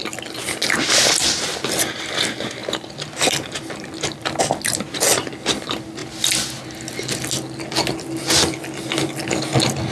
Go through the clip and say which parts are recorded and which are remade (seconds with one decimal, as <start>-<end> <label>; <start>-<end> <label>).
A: 0.0-9.9 recorded